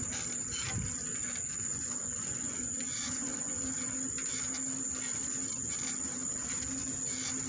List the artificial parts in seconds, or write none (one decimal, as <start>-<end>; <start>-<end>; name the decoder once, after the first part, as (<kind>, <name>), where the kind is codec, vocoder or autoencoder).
1.2-3.6 (vocoder, Vocos)